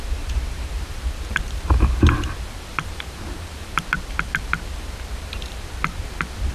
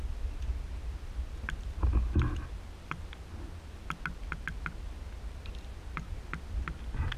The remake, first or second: first